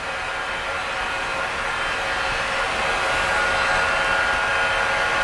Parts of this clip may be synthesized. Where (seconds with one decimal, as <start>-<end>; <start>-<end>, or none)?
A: none